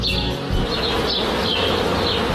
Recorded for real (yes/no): yes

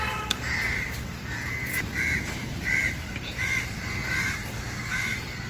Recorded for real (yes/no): no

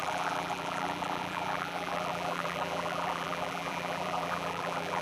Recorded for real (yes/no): no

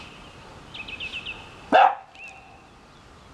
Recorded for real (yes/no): yes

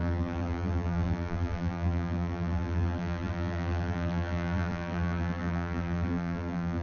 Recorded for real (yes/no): no